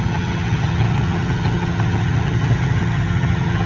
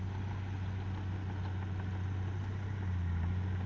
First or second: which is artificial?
first